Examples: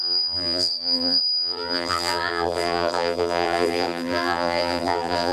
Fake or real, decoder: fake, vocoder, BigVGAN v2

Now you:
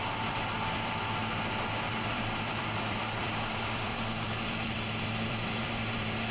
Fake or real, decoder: fake, vocoder, BigVGAN v2